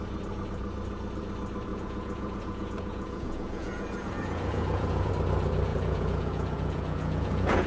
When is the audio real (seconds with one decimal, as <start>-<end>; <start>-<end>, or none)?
0.0-1.7; 5.1-5.7

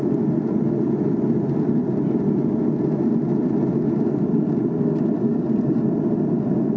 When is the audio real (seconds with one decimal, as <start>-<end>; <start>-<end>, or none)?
0.0-6.8

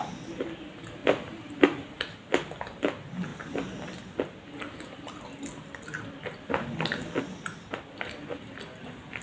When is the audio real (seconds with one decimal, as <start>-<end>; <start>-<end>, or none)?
0.0-9.2

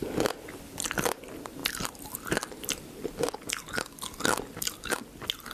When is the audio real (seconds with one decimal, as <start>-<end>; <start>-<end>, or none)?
0.0-5.5

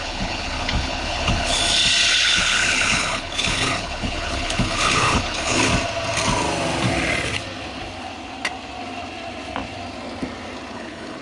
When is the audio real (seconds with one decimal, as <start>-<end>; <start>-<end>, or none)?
1.6-2.1; 5.7-10.7

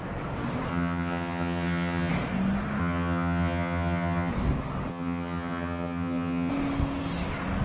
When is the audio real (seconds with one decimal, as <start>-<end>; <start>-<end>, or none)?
0.0-0.7; 2.1-2.8; 4.3-4.9; 6.5-7.6